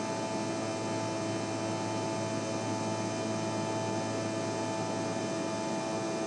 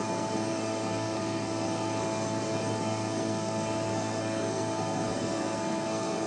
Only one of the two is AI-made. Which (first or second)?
second